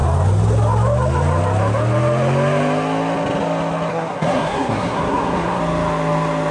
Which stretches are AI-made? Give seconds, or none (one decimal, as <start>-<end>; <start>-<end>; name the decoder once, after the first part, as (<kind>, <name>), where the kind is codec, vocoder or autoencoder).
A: 3.9-5.6 (codec, SNAC)